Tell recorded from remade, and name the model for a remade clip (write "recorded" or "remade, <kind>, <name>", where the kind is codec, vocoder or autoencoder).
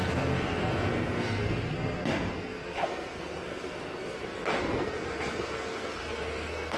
remade, codec, SNAC